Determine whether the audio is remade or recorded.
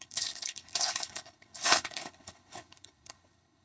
remade